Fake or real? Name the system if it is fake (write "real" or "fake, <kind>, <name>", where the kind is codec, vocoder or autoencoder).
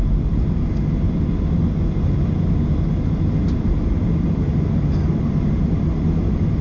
real